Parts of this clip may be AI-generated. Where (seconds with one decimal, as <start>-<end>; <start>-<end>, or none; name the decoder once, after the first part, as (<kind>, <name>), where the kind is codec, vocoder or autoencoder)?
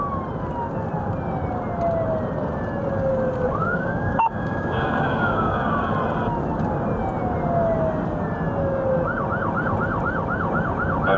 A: 3.6-5.8 (codec, DAC)